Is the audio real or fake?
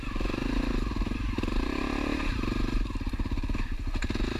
real